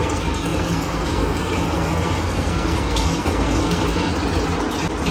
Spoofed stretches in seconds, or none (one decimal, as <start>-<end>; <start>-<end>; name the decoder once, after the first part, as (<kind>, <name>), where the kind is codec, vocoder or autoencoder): 0.0-4.1 (codec, SNAC)